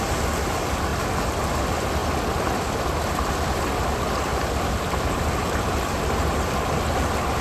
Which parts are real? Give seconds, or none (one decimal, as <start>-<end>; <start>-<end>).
0.0-2.0; 3.6-4.3; 6.8-7.4